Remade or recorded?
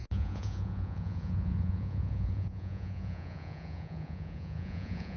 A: remade